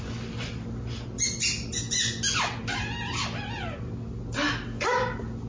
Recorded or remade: recorded